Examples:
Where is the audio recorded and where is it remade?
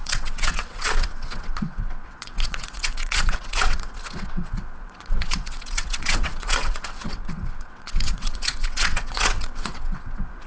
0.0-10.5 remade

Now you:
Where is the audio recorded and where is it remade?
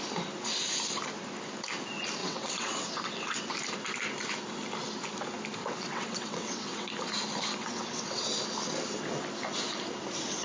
0.0-2.2 recorded; 2.2-3.5 remade; 3.5-5.6 recorded; 5.6-6.9 remade; 6.9-7.6 recorded; 7.6-8.3 remade; 8.3-10.4 recorded